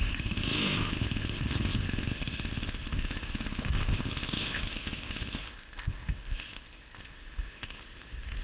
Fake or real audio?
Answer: fake